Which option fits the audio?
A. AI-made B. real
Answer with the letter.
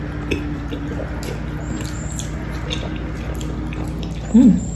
B